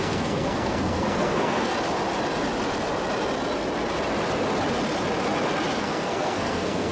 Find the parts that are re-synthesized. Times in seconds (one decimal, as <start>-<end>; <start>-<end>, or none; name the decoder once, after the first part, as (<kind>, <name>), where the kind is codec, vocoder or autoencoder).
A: 0.0-1.7 (codec, SNAC); 5.8-6.9